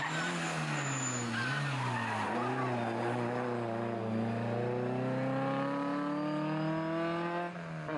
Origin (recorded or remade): recorded